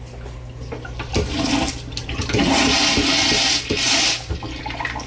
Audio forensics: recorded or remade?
recorded